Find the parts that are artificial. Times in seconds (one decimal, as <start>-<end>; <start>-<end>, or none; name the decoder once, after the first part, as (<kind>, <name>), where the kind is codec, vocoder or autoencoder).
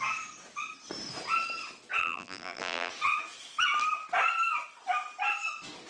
2.0-2.9 (vocoder, BigVGAN v2)